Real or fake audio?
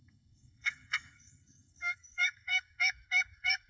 fake